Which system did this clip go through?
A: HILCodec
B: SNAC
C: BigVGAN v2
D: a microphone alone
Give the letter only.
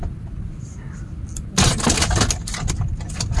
D